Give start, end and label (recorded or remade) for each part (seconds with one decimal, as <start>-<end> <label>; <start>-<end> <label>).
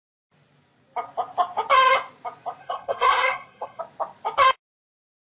0.0-2.6 recorded; 2.6-3.8 remade; 3.8-5.4 recorded